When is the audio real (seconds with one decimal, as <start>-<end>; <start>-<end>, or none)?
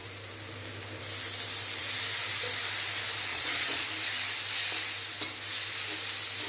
0.0-3.3; 3.9-6.5